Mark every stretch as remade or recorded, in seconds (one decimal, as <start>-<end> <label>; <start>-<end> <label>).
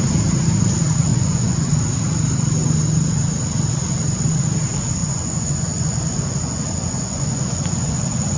0.0-1.1 recorded; 1.1-1.8 remade; 1.8-5.0 recorded; 5.0-8.4 remade